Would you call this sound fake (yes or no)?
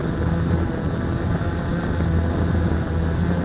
no